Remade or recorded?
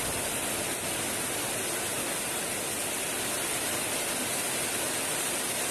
recorded